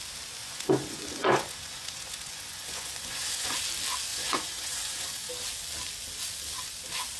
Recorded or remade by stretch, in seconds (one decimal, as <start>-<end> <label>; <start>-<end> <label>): 0.0-0.4 recorded; 0.4-3.6 remade; 3.6-4.1 recorded; 4.1-5.3 remade; 5.3-7.2 recorded